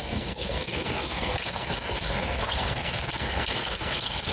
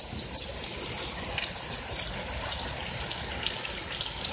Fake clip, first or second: first